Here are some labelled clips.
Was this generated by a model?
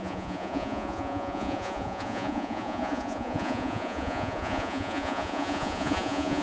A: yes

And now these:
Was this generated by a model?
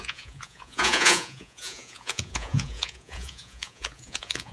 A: yes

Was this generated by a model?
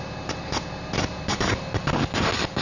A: no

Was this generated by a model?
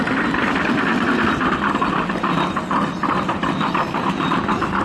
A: no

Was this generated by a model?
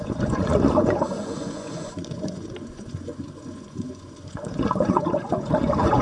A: yes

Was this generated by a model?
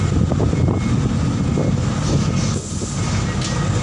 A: no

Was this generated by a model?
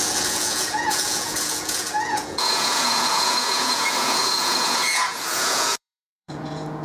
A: yes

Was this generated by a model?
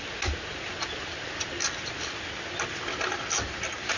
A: no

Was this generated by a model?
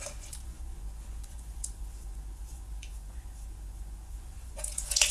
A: yes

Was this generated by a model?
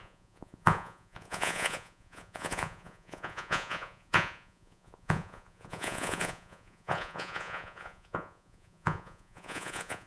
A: yes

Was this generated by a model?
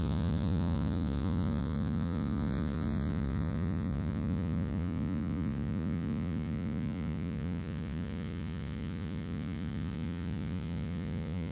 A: yes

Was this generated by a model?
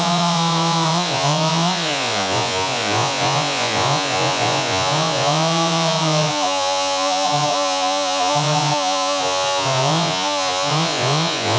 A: yes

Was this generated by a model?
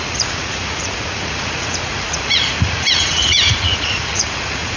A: yes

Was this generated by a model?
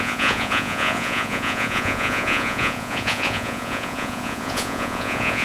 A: yes